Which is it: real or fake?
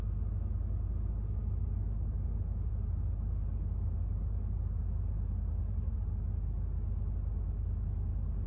real